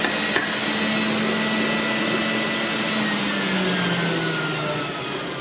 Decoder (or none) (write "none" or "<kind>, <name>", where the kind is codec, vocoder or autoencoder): none